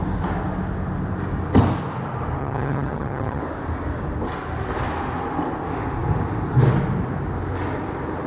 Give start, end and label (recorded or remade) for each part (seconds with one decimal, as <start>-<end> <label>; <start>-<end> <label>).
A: 0.0-2.4 recorded; 2.4-3.4 remade; 3.4-8.3 recorded